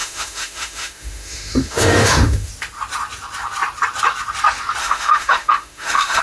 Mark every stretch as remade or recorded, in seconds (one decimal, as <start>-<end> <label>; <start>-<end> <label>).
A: 0.0-2.5 remade; 2.5-4.8 recorded; 4.8-6.2 remade

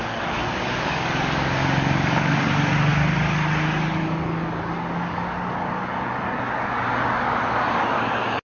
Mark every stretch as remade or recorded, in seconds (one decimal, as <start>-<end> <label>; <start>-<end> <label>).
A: 0.0-8.4 remade

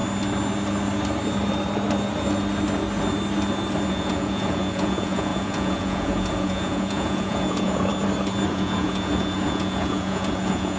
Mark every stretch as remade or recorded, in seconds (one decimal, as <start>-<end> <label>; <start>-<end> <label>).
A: 0.0-3.9 recorded; 3.9-7.9 remade; 7.9-8.5 recorded; 8.5-10.8 remade

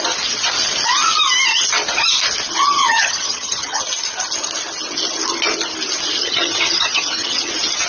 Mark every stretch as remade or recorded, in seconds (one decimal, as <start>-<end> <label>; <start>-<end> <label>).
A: 0.0-2.8 recorded; 2.8-3.8 remade; 3.8-6.2 recorded; 6.2-7.5 remade; 7.5-7.9 recorded

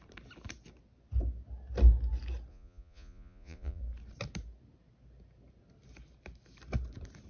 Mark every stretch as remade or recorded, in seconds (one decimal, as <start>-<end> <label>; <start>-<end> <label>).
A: 0.0-2.5 recorded; 2.5-3.8 remade; 3.8-7.3 recorded

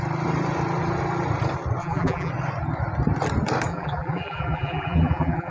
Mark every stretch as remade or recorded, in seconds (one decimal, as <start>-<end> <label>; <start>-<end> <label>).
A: 0.0-1.8 recorded; 1.8-2.3 remade; 2.3-3.7 recorded; 3.7-5.5 remade